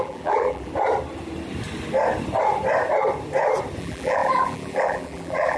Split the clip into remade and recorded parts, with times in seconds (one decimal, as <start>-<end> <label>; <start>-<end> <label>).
0.0-0.7 remade; 0.7-3.8 recorded; 3.8-5.6 remade